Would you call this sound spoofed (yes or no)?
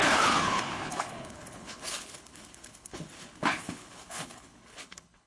yes